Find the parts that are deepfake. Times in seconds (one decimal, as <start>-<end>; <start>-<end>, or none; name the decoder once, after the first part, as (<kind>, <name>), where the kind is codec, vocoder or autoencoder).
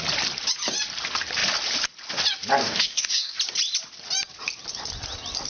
2.6-3.4 (codec, DAC)